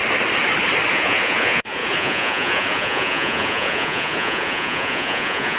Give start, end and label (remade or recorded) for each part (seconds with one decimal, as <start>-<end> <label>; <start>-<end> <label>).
0.0-0.9 recorded; 0.9-5.6 remade